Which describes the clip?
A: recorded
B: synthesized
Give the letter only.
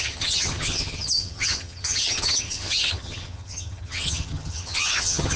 B